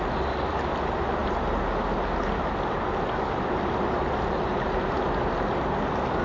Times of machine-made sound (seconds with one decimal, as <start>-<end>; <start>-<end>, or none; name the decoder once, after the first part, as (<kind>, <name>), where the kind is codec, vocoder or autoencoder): none